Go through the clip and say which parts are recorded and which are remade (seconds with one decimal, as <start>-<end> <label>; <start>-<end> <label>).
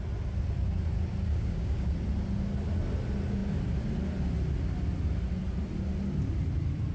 0.0-1.3 recorded; 1.3-1.9 remade; 1.9-6.9 recorded